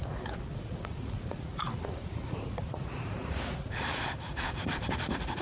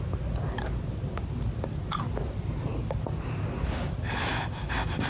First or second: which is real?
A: second